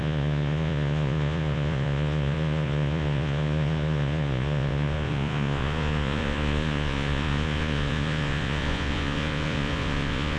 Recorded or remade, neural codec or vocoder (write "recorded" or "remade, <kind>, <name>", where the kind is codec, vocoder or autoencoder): remade, vocoder, Vocos